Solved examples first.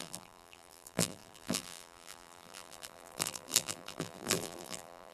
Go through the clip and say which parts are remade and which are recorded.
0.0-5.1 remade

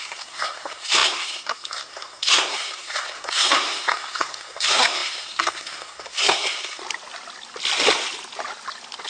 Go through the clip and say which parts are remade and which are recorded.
0.0-6.8 remade; 6.8-9.1 recorded